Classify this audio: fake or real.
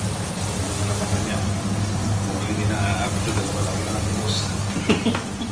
real